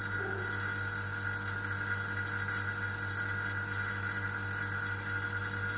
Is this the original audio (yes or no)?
yes